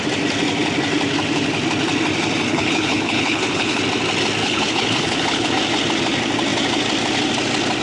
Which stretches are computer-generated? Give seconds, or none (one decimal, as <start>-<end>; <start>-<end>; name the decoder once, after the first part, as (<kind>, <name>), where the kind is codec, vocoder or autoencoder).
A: 2.5-3.8 (codec, HILCodec); 4.4-5.5